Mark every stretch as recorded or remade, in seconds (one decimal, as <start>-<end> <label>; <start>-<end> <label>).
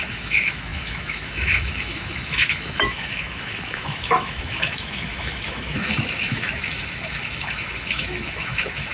0.0-8.9 remade